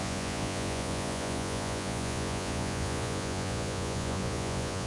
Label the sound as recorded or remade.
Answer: remade